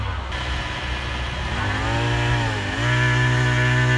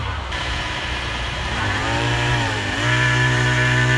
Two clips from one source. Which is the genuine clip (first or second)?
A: first